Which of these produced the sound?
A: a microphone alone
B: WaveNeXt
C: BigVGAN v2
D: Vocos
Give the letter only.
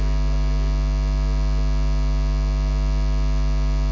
A